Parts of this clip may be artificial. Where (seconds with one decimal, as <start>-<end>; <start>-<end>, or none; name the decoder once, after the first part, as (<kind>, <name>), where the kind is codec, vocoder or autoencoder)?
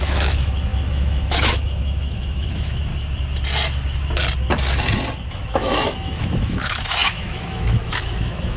0.0-2.9 (autoencoder, DAC-VAE); 5.3-8.6